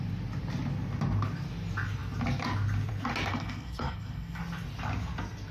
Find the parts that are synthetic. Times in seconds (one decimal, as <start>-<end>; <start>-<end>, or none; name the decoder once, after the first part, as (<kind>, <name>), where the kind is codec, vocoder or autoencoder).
3.3-4.4 (codec, SNAC)